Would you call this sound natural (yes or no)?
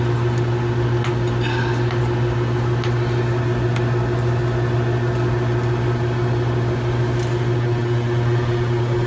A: yes